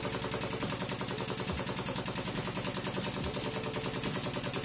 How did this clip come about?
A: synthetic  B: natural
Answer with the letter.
B